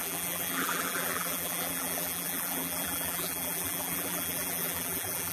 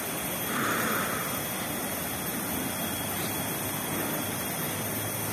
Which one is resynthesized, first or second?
first